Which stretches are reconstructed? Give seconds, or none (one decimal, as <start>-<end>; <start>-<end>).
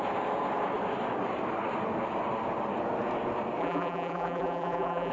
3.6-5.1